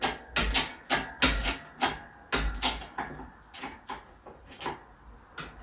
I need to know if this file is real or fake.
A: real